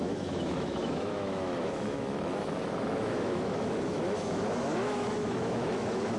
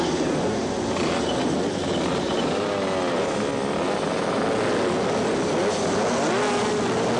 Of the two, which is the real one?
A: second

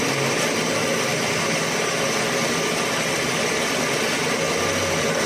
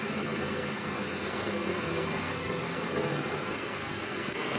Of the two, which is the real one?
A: first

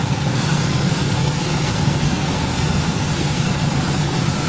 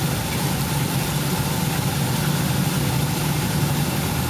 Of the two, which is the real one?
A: second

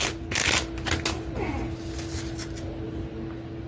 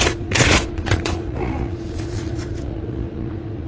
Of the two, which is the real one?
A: first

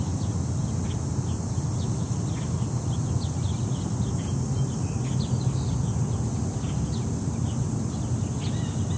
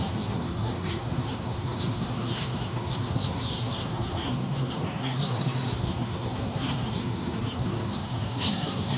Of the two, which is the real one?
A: first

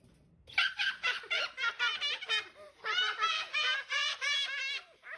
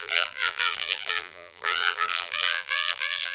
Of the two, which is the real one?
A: first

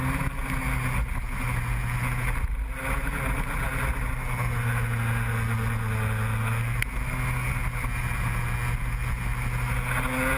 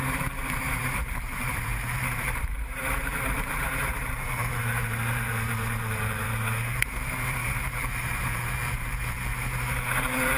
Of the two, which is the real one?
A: first